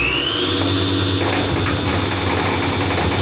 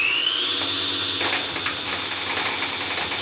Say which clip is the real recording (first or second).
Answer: first